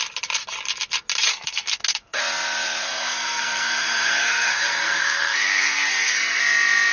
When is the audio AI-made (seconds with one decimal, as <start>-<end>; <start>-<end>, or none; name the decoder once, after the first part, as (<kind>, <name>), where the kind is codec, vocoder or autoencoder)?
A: 1.3-2.2 (codec, SNAC); 2.8-6.4